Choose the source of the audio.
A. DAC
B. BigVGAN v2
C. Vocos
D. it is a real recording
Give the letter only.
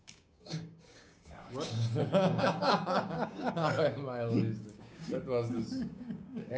A